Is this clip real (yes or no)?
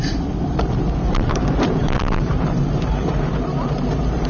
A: no